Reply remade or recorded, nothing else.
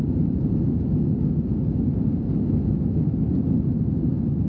recorded